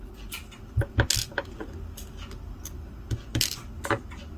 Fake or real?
real